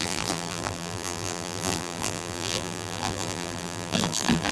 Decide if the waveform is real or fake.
fake